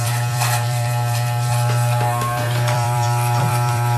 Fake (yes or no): yes